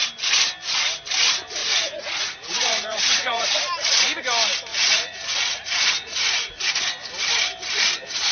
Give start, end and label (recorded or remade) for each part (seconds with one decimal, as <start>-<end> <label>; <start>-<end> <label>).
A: 0.0-1.6 recorded; 1.6-3.6 remade; 3.6-4.7 recorded; 4.7-6.8 remade; 6.8-8.3 recorded